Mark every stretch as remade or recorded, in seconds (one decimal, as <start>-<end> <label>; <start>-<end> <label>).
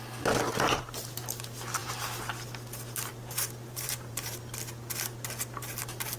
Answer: 0.0-1.8 recorded; 1.8-2.3 remade; 2.3-3.1 recorded; 3.1-4.4 remade; 4.4-6.2 recorded